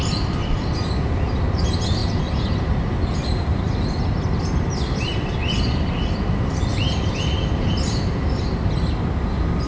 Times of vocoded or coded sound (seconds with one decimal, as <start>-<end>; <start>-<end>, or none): none

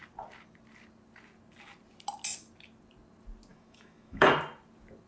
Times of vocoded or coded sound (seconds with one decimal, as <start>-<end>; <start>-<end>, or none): 3.5-4.3

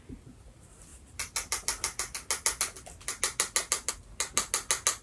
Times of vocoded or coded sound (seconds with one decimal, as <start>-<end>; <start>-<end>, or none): none

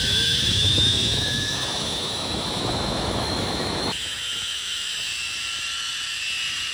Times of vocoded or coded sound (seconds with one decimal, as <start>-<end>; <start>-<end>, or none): 0.0-5.1

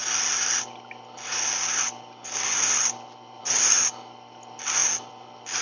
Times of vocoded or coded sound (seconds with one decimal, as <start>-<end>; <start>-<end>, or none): none

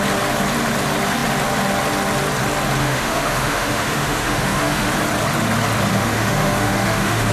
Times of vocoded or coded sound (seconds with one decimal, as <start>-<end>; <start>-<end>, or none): 2.8-4.9; 5.9-7.3

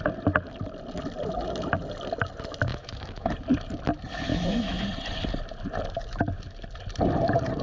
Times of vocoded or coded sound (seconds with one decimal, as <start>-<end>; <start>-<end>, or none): 2.7-3.3; 4.3-4.8